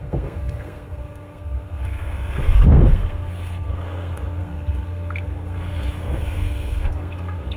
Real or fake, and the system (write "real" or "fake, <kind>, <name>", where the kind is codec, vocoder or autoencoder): fake, codec, SNAC